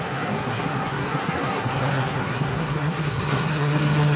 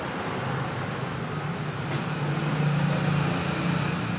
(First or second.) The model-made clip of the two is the first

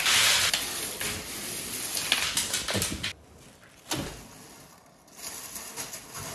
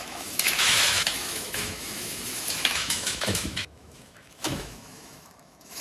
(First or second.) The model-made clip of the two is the second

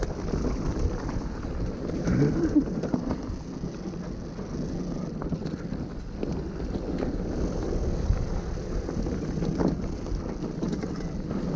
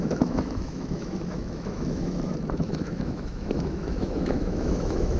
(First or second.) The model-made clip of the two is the second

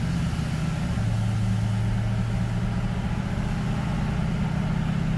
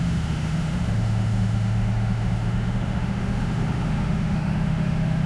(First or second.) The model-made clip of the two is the second